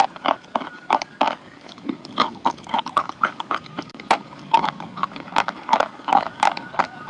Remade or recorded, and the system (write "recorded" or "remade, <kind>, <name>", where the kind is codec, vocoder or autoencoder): remade, codec, DAC